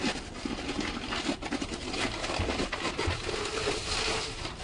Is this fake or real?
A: real